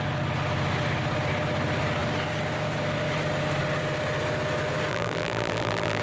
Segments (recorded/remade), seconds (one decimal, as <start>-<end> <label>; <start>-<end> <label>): 0.0-4.9 recorded; 4.9-6.0 remade